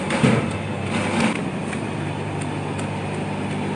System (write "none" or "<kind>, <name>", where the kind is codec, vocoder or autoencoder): vocoder, BigVGAN v2